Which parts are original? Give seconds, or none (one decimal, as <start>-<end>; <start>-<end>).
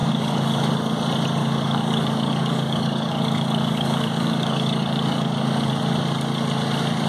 0.7-1.4; 5.7-7.1